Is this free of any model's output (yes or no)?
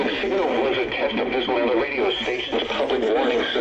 no